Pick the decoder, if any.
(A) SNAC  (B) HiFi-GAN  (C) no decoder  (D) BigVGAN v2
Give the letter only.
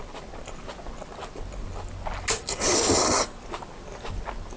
C